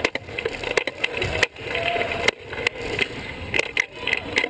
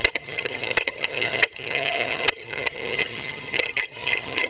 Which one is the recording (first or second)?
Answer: first